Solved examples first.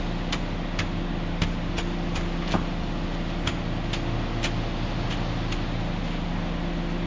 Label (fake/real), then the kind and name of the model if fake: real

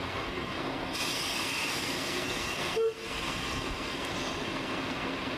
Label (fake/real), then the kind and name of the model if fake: fake, codec, SNAC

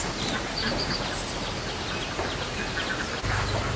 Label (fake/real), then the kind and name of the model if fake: real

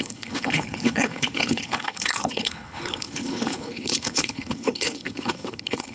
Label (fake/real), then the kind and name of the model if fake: fake, codec, HILCodec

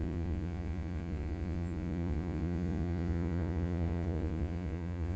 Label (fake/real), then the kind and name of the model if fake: fake, vocoder, Vocos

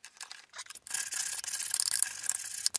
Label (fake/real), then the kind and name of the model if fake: real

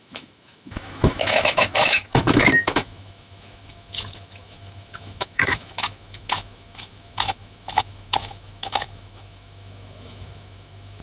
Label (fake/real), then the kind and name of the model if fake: fake, autoencoder, DAC-VAE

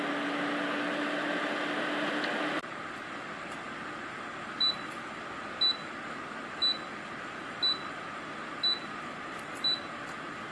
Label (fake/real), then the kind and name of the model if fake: real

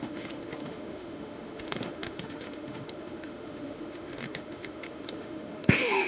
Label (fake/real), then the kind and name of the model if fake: fake, autoencoder, DAC-VAE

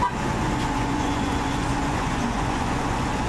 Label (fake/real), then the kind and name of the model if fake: fake, vocoder, Vocos